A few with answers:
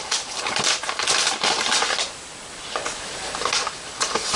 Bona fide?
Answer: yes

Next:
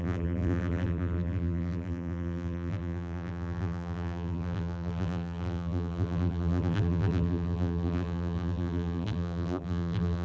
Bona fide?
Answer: no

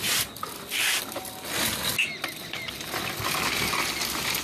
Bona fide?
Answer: yes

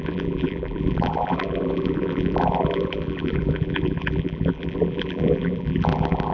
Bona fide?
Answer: no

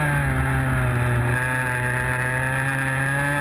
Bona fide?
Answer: yes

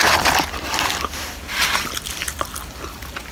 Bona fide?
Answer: yes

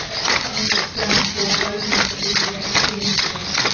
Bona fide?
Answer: yes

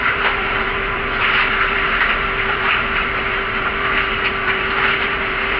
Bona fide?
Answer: no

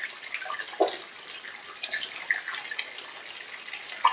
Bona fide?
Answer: yes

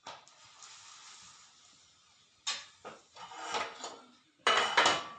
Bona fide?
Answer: yes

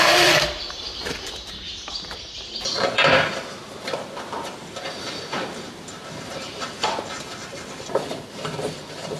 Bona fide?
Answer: no